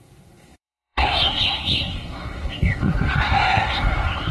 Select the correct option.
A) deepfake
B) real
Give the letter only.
A